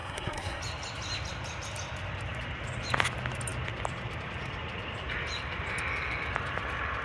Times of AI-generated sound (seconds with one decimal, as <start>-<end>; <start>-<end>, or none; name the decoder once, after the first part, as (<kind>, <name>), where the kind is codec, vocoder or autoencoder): 0.0-0.6 (codec, SNAC)